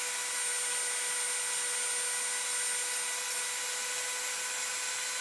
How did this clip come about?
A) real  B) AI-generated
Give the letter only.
A